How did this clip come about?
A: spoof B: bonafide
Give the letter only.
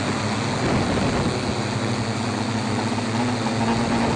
B